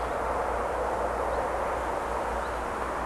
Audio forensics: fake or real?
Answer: real